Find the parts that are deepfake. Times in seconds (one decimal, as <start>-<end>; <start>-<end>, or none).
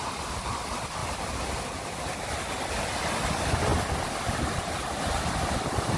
none